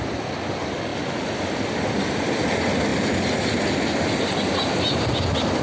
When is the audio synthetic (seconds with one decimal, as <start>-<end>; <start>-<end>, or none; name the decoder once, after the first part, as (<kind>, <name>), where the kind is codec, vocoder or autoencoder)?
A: none

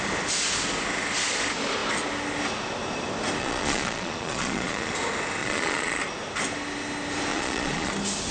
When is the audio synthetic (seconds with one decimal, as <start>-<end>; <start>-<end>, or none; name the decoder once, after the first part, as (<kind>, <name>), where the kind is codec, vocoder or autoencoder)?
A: 3.4-4.9 (vocoder, Vocos); 5.4-6.0; 7.3-7.9

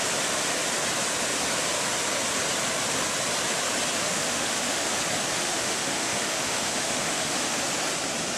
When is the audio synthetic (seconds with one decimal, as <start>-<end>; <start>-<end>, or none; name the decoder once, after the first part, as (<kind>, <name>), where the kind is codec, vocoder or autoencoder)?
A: 4.0-4.9 (autoencoder, DAC-VAE); 5.4-7.6

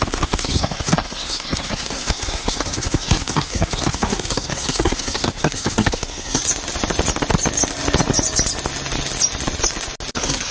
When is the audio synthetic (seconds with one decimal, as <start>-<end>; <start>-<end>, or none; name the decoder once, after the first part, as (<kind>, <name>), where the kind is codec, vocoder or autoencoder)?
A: 0.0-6.4 (codec, SNAC); 10.1-10.5

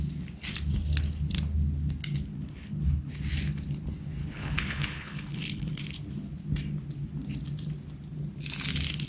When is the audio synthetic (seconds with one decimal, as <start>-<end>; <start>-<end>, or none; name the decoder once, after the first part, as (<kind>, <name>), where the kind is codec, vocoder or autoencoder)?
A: 2.3-3.1 (codec, HILCodec); 4.2-5.7

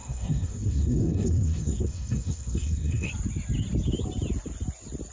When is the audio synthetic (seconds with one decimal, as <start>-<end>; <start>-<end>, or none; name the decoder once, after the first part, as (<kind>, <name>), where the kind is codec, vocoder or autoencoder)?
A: 0.0-3.1 (codec, SNAC)